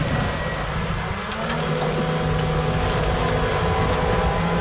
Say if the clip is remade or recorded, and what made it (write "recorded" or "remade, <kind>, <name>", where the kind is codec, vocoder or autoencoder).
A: recorded